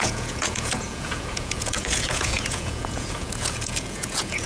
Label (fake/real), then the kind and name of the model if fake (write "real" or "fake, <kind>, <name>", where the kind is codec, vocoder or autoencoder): fake, vocoder, Vocos